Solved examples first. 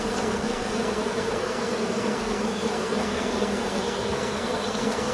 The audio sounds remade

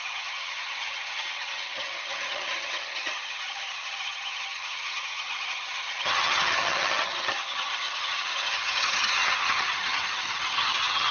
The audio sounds remade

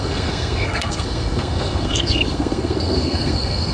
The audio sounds remade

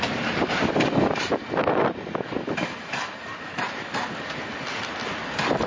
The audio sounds recorded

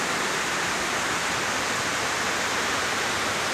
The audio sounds remade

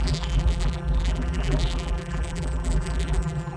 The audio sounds remade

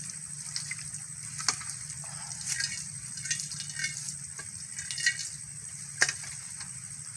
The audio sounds recorded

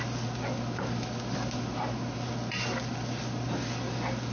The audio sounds recorded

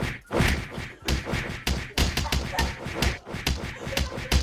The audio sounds remade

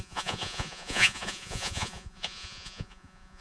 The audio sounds remade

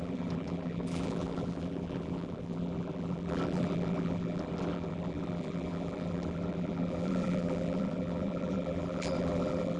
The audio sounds remade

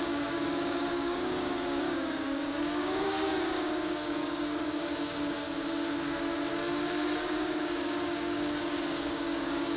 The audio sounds remade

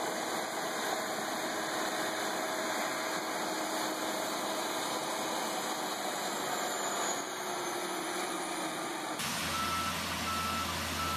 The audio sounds recorded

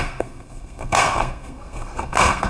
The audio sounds remade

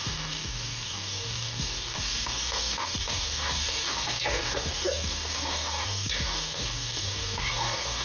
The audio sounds remade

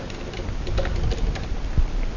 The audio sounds recorded